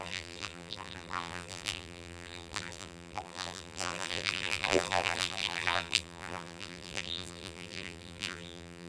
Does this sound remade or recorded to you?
remade